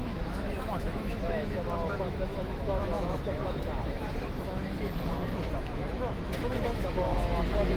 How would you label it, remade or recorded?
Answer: remade